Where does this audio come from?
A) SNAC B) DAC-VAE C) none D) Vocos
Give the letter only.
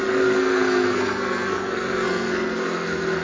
A